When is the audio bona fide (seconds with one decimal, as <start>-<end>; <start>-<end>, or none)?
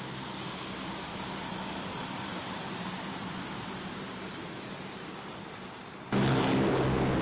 0.0-1.5; 5.8-7.2